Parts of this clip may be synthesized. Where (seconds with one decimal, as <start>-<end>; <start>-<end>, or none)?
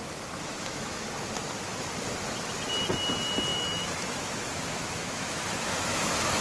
0.0-1.1; 3.5-6.4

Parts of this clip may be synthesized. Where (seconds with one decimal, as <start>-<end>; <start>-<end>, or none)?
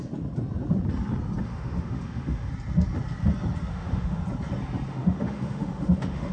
1.4-2.5; 3.7-4.2; 4.9-6.3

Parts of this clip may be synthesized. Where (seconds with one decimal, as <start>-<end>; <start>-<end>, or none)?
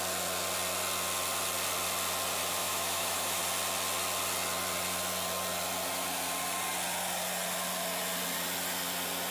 2.6-3.4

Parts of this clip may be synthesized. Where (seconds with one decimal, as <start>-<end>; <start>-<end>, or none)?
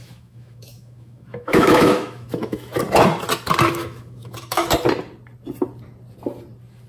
0.0-2.8; 3.8-4.7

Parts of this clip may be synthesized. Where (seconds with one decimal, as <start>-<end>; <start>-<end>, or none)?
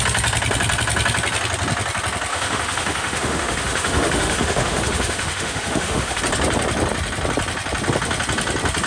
2.3-6.2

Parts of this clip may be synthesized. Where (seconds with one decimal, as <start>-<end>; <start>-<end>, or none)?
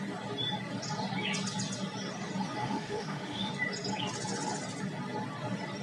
2.6-3.5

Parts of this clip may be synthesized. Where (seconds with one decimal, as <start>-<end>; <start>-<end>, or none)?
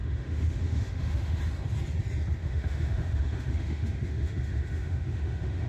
0.0-1.4; 2.4-5.7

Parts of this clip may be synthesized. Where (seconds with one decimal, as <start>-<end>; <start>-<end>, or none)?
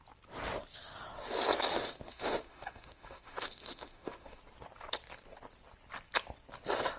1.7-4.4